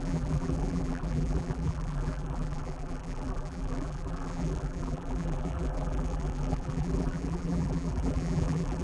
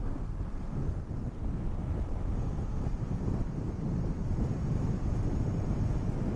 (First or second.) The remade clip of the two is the first